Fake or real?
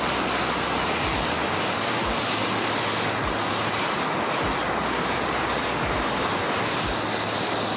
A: real